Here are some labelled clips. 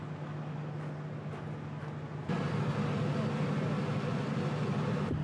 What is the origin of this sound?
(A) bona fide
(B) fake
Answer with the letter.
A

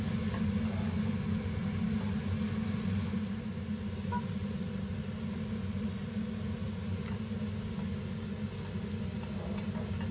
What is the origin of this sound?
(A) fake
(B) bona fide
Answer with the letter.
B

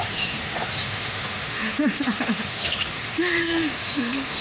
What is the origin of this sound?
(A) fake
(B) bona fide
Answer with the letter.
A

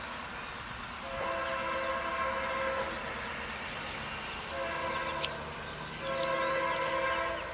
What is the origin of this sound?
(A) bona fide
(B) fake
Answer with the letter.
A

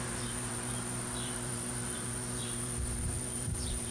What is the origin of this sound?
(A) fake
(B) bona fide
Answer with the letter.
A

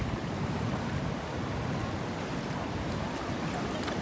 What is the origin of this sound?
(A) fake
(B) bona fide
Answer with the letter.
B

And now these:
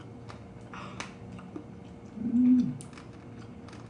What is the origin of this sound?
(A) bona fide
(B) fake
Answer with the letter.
A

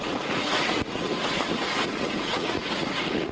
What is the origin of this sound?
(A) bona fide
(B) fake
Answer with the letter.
B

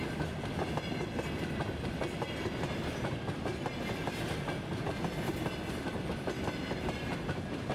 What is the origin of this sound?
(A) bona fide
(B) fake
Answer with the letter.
A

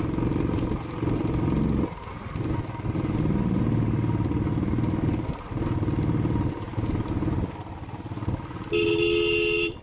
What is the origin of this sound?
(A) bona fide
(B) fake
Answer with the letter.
A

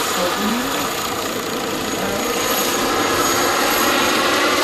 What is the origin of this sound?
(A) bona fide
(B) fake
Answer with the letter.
B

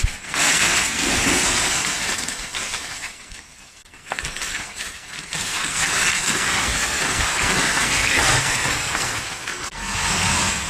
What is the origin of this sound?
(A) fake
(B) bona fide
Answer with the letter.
A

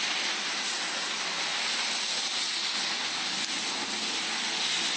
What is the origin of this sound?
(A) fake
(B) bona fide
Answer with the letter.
B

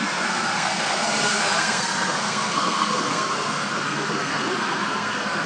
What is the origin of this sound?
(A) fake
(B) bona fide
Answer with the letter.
A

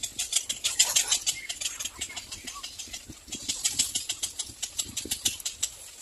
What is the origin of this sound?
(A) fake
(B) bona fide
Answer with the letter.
B